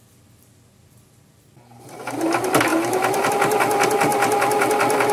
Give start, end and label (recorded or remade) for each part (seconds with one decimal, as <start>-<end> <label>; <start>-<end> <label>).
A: 0.0-5.1 recorded